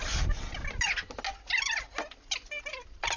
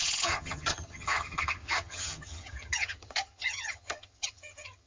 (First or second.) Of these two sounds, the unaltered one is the first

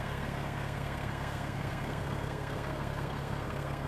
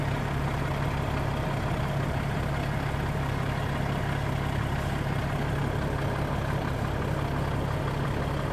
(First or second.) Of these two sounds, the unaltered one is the second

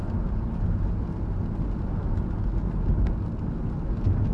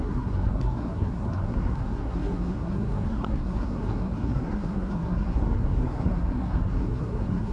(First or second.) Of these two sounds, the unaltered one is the first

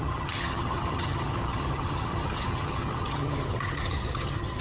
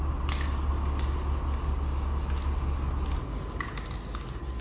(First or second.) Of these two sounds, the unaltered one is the second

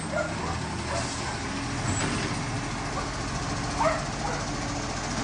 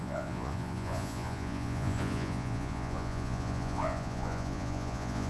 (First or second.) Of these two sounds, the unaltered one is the first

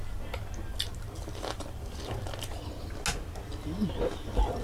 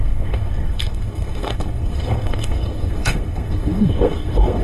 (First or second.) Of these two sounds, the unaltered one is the first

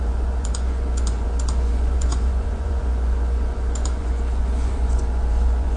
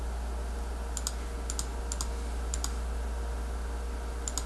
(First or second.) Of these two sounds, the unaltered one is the second